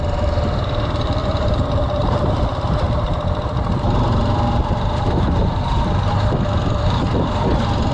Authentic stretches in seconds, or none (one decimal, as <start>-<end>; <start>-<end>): none